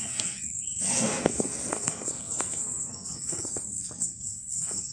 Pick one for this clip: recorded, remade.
remade